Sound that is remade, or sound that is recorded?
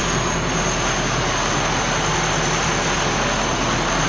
recorded